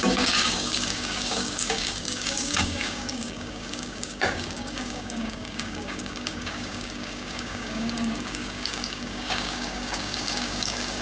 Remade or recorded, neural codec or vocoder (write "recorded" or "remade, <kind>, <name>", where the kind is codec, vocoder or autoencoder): remade, codec, DAC